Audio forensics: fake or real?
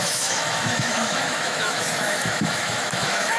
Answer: fake